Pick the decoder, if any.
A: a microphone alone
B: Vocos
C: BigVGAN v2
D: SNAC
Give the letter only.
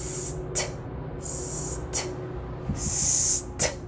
A